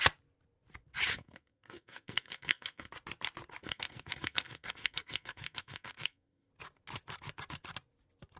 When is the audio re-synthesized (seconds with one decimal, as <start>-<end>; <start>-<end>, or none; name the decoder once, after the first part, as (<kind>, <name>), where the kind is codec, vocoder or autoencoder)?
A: 1.1-2.9 (codec, SNAC); 3.6-6.5